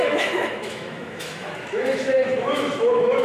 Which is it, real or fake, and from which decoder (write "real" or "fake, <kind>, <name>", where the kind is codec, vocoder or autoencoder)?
fake, autoencoder, DAC-VAE